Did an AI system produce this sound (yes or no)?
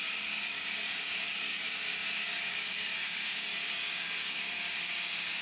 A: yes